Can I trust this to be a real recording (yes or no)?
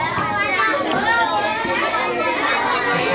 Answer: yes